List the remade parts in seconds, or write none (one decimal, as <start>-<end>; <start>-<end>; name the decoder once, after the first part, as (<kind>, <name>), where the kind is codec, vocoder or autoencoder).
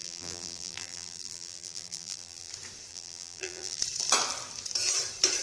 0.0-2.5 (vocoder, BigVGAN v2); 2.9-3.8